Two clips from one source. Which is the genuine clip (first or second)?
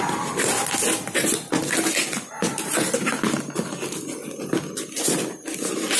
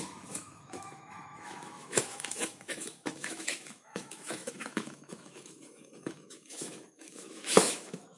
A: first